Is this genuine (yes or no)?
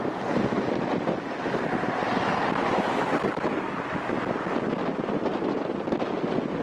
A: yes